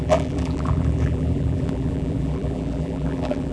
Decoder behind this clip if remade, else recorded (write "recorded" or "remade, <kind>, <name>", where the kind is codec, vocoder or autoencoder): remade, vocoder, BigVGAN v2